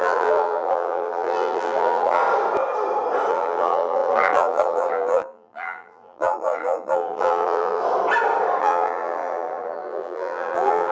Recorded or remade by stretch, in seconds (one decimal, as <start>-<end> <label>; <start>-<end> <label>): 0.0-2.2 remade; 2.2-3.3 recorded; 3.3-7.8 remade; 7.8-8.6 recorded; 8.6-10.9 remade

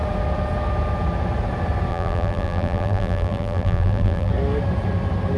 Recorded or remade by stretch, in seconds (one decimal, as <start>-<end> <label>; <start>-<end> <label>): 0.0-1.9 recorded; 1.9-4.3 remade; 4.3-5.4 recorded